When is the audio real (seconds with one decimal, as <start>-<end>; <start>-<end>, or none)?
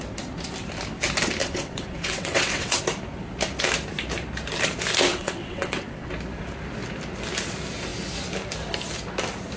0.0-1.4; 2.8-5.1; 6.1-9.6